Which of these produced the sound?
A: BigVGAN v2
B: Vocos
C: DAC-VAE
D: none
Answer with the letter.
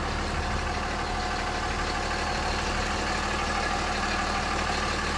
D